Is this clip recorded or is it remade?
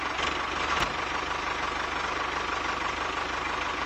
recorded